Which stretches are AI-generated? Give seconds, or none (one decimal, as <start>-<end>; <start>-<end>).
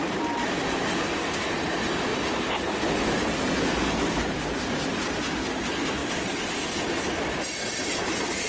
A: none